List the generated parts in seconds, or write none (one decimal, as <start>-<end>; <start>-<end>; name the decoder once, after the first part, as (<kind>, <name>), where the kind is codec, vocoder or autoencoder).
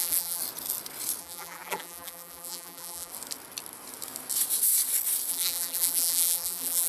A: 0.0-0.4 (vocoder, BigVGAN v2); 1.2-3.1; 5.3-6.9